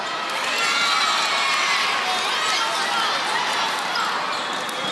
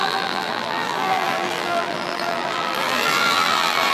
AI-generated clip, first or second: second